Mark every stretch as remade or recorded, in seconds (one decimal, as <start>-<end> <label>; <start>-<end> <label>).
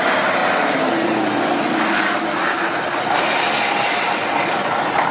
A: 0.0-5.1 recorded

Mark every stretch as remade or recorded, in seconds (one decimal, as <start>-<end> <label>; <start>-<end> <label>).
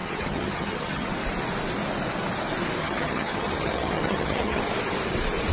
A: 0.0-1.1 remade; 1.1-2.8 recorded; 2.8-4.6 remade; 4.6-5.5 recorded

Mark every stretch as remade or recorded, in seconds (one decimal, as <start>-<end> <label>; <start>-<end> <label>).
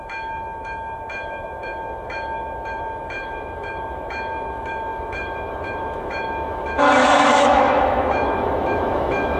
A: 0.0-9.4 remade